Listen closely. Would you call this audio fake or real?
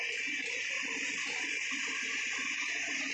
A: real